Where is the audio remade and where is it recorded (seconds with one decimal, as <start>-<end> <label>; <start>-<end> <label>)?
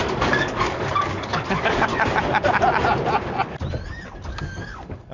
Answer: 0.0-1.9 remade; 1.9-4.3 recorded; 4.3-5.1 remade